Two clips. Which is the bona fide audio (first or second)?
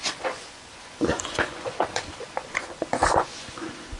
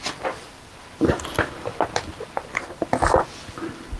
second